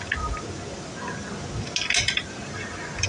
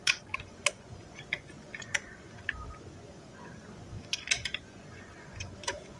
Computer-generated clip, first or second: second